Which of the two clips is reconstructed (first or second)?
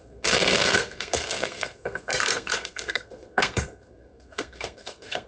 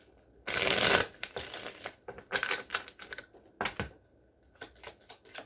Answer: first